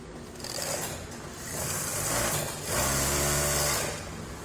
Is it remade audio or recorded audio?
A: recorded